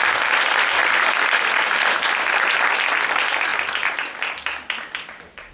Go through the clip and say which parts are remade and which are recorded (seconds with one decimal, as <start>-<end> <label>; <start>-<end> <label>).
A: 0.0-0.8 recorded; 0.8-1.5 remade; 1.5-5.5 recorded

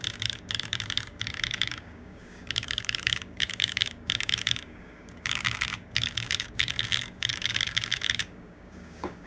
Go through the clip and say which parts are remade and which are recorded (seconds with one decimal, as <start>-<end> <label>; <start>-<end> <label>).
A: 0.0-9.3 remade